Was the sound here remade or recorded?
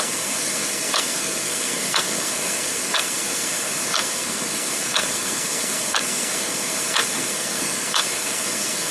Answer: remade